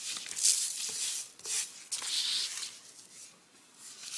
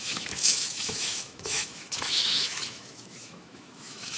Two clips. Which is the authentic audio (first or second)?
first